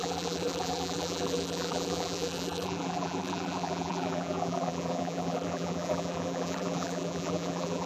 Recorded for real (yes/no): no